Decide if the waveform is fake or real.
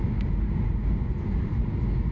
real